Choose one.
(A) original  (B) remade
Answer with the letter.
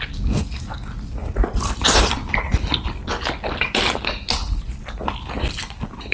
A